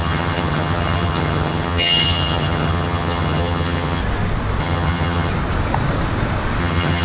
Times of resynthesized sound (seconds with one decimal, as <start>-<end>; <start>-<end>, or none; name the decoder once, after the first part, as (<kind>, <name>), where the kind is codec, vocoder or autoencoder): 0.0-4.0 (vocoder, HiFi-GAN); 4.6-5.3; 6.6-7.0

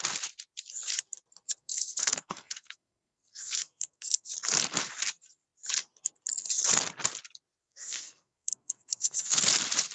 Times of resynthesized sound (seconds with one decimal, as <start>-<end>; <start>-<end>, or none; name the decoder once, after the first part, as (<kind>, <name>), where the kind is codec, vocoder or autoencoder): 1.6-4.3 (codec, SNAC); 7.6-9.4